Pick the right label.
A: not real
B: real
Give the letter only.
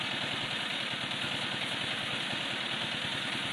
B